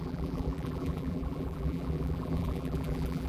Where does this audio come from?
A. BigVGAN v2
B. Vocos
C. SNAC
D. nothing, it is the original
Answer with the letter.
A